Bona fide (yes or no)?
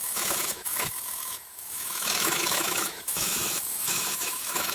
no